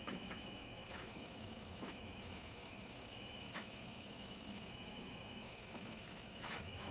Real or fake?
fake